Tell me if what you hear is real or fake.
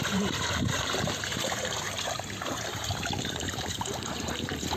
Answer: fake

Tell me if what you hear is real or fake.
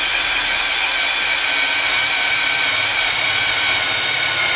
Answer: fake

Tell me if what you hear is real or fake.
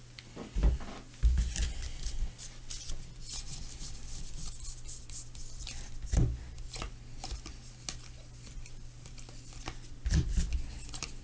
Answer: real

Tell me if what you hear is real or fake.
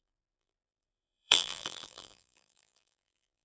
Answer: fake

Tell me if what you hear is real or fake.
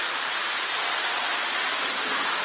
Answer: fake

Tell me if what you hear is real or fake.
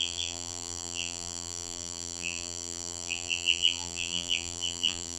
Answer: fake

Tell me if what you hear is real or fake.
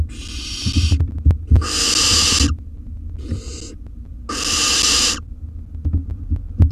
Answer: real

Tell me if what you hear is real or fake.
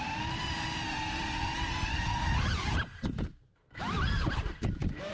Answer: fake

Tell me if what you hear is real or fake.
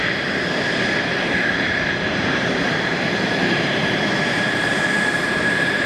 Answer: fake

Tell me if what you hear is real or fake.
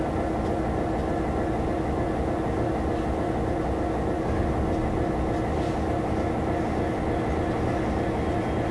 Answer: real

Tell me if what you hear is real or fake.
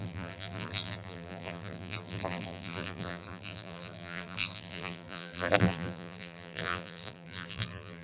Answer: fake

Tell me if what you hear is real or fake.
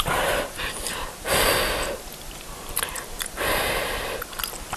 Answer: real